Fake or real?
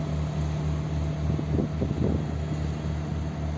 real